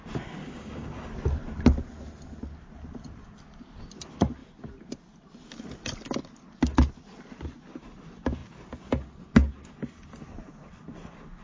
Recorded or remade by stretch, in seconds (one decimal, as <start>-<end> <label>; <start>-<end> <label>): 0.0-0.4 recorded; 0.4-1.1 remade; 1.1-11.4 recorded